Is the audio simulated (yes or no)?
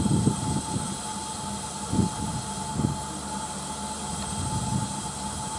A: no